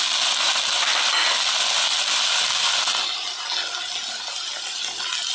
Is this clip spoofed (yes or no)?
no